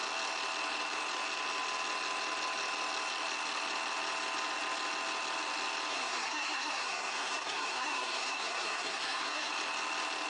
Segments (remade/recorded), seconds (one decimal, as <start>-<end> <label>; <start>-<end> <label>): 0.0-5.9 recorded; 5.9-9.5 remade; 9.5-10.3 recorded